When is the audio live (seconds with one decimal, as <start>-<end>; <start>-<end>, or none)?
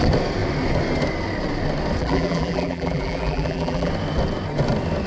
0.0-2.0; 3.9-5.1